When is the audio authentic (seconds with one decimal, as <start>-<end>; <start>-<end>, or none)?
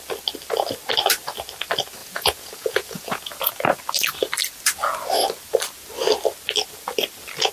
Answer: 0.0-2.0; 3.5-7.5